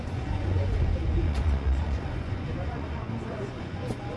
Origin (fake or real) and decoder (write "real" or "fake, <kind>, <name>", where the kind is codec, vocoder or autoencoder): fake, vocoder, Vocos